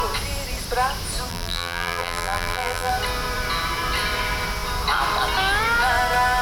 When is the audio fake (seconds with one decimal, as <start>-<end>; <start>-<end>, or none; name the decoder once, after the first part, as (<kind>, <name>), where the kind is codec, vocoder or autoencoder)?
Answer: 1.3-2.9 (vocoder, BigVGAN v2)